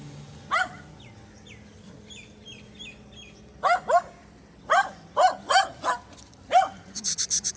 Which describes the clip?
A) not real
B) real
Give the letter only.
B